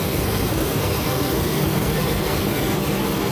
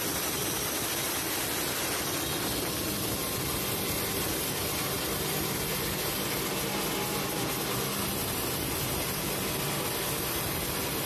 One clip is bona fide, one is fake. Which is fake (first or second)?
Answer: first